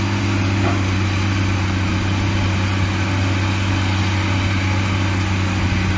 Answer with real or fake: real